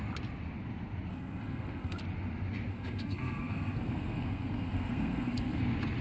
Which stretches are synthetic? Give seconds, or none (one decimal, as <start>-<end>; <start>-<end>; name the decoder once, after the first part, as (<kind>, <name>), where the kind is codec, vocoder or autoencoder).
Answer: 1.1-2.0 (codec, SNAC); 2.7-5.6